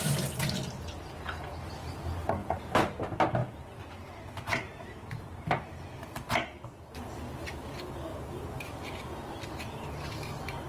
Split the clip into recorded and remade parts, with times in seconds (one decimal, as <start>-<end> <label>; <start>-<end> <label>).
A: 0.0-2.4 recorded; 2.4-3.0 remade; 3.0-3.4 recorded; 3.4-5.8 remade; 5.8-8.1 recorded; 8.1-8.6 remade; 8.6-10.7 recorded